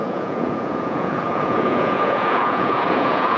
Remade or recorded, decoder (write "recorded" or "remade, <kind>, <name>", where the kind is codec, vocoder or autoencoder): remade, vocoder, Vocos